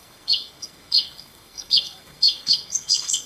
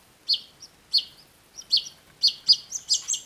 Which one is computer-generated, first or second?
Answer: first